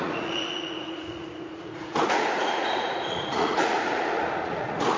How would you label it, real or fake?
fake